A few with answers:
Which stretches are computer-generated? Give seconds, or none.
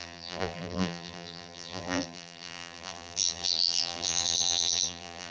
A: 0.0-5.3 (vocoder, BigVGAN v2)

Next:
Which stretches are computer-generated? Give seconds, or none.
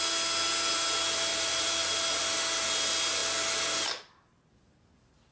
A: 1.3-2.2 (vocoder, BigVGAN v2)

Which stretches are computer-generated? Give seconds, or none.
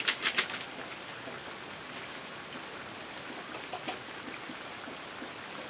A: none